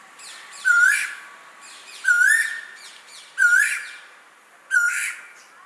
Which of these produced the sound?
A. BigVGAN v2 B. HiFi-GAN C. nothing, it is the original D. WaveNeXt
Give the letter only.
A